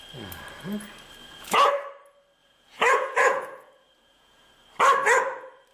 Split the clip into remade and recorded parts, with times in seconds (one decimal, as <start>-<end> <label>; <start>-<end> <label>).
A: 0.0-1.2 recorded; 1.2-1.7 remade; 1.7-2.4 recorded; 2.4-4.5 remade; 4.5-5.7 recorded